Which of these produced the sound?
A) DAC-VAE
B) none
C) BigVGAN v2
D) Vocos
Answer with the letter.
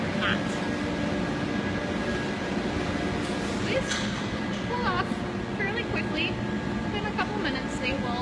B